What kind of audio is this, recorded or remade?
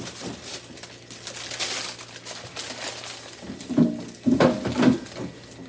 recorded